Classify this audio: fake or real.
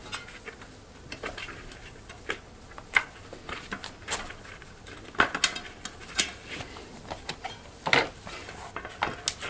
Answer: real